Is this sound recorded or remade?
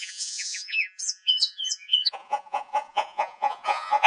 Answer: remade